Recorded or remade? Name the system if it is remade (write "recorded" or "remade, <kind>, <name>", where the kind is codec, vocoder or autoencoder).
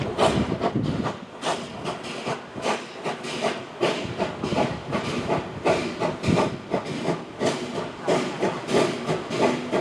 recorded